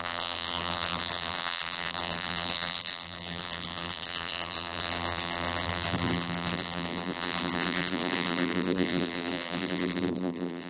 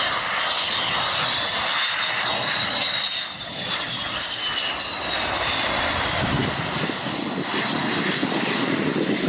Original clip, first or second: second